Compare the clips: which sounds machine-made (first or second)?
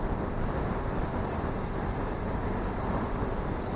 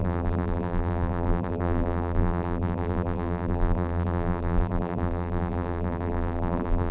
second